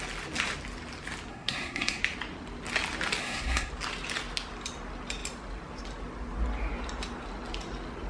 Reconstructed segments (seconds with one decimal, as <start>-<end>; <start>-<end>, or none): 1.3-2.0; 3.2-3.7